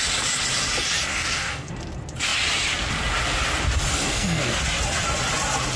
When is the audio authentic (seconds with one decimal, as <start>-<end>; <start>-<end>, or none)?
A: 0.0-1.1; 1.7-3.9; 4.6-5.8